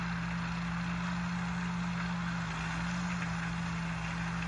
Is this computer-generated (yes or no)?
no